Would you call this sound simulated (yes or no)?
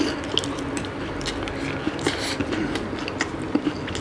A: no